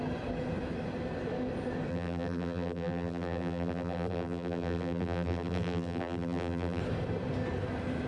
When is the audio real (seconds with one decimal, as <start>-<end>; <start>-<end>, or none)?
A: 0.0-1.9; 6.8-8.1